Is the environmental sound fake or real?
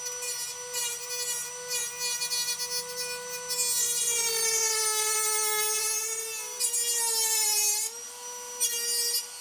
real